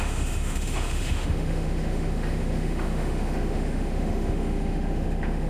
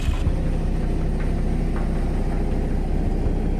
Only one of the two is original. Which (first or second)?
second